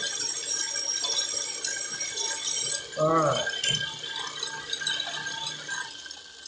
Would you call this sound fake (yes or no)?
no